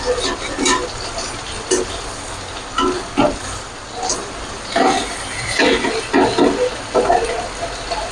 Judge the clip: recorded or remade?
recorded